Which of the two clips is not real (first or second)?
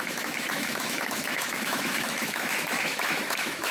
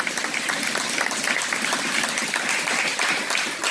first